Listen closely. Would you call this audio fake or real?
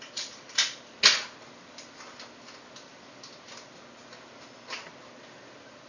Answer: real